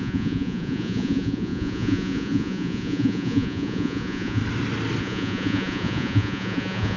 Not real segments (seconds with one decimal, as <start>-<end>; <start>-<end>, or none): 0.0-4.4; 5.0-7.0